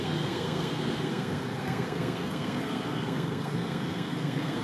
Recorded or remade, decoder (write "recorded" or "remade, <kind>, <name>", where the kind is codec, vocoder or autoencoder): remade, codec, SNAC